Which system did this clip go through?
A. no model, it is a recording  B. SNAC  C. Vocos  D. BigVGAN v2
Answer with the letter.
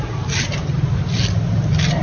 A